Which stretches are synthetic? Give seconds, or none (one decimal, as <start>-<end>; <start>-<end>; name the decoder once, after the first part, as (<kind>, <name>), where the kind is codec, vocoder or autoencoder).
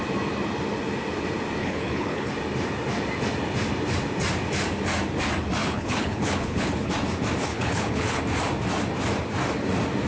1.6-2.3 (codec, HILCodec); 5.6-6.9; 7.5-8.2